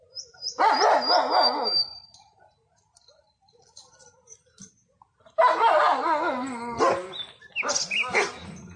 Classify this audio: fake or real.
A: real